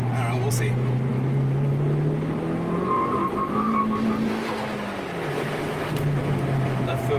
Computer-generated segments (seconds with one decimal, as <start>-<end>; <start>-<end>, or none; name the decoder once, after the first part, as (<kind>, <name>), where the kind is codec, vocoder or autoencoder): none